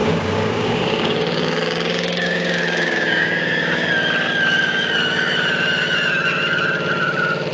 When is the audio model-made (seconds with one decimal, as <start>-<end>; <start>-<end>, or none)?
0.0-3.9